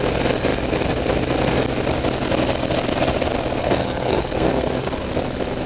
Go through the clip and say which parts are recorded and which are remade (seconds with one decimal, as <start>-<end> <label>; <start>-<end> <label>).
0.0-3.6 recorded; 3.6-5.1 remade; 5.1-5.7 recorded